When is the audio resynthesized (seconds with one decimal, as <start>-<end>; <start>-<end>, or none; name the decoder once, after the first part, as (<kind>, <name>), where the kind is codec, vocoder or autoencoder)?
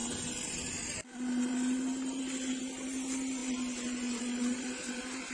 none